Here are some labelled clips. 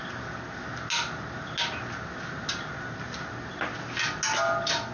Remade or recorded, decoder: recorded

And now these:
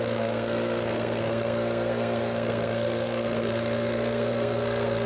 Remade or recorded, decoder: remade, codec, SNAC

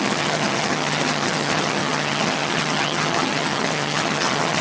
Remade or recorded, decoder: remade, vocoder, HiFi-GAN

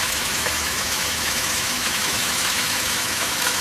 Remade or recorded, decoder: remade, autoencoder, DAC-VAE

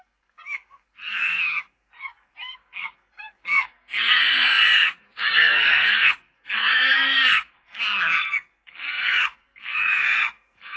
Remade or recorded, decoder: remade, codec, SNAC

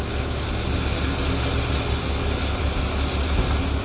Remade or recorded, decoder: recorded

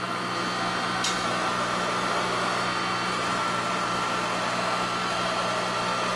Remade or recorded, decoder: recorded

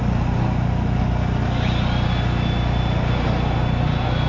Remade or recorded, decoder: recorded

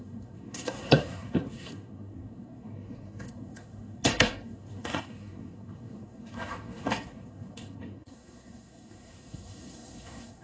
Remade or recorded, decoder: remade, codec, SNAC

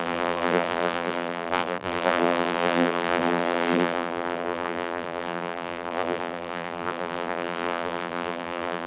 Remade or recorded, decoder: remade, vocoder, BigVGAN v2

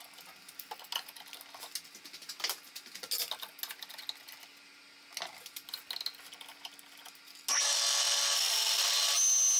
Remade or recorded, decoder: recorded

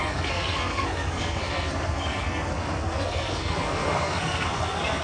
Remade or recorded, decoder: remade, codec, SNAC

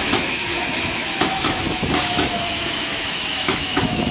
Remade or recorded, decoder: remade, autoencoder, DAC-VAE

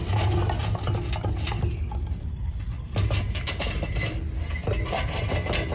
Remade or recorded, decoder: recorded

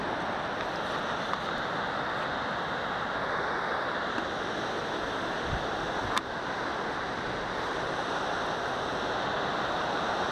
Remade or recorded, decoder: recorded